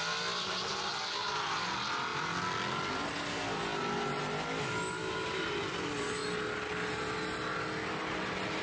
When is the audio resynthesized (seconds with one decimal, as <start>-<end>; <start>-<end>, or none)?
none